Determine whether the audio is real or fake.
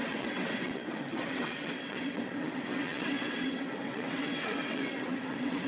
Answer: fake